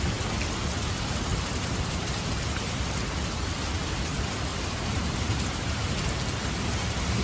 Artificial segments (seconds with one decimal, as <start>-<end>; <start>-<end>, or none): 1.3-2.8; 4.5-5.9